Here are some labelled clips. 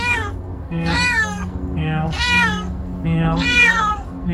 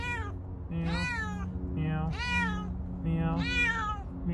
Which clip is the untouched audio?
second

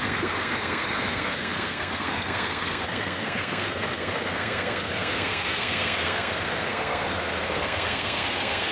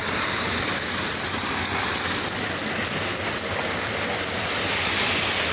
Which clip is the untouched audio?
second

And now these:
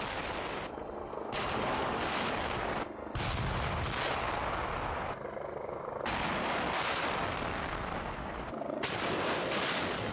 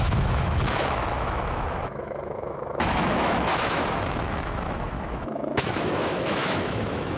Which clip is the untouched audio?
first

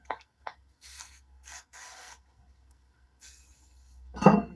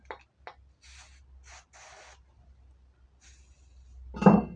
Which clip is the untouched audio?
second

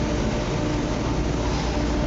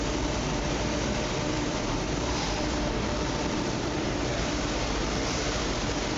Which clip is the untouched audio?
first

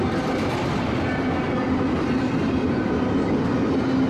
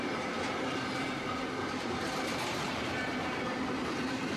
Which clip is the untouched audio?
first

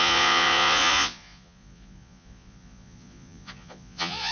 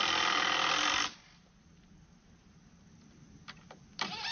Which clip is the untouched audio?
second